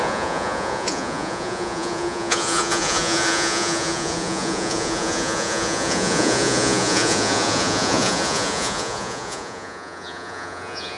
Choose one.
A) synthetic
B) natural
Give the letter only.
A